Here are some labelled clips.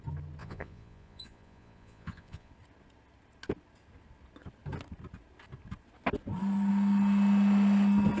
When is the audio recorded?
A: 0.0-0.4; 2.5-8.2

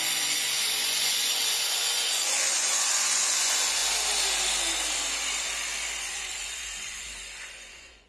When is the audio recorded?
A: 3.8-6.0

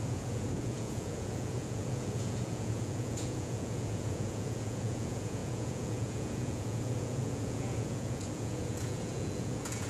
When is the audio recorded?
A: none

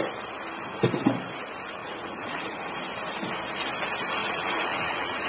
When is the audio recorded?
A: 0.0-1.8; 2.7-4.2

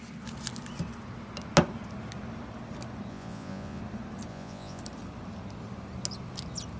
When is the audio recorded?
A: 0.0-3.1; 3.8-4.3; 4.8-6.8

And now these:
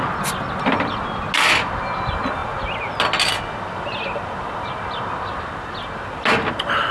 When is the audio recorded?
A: 0.0-6.9

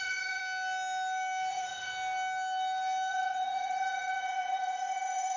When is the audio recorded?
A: 0.4-1.5; 1.9-3.1

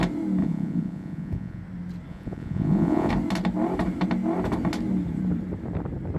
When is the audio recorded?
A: 0.0-0.4; 1.6-2.1; 3.1-6.2